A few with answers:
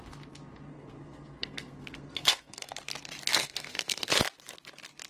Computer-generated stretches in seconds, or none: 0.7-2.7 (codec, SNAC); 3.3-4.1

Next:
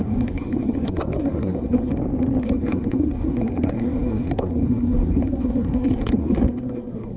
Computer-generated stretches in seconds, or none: 0.0-1.9 (codec, SNAC); 2.4-7.2

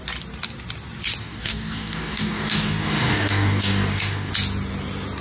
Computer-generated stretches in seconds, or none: 1.2-4.3 (codec, DAC)

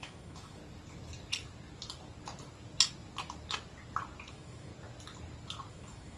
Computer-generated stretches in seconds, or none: 0.0-0.6 (autoencoder, DAC-VAE); 4.3-4.7; 5.7-6.2

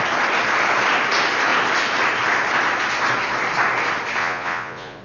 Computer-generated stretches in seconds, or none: 4.2-5.0 (vocoder, Vocos)